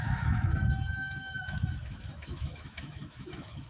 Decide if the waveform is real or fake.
fake